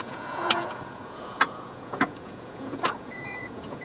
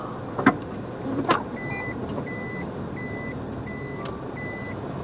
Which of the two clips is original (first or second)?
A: second